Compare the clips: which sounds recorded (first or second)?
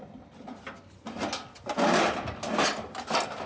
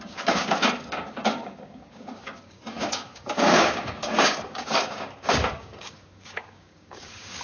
first